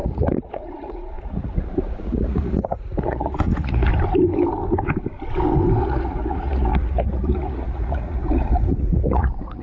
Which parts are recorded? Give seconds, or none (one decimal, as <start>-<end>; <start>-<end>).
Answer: 3.9-5.8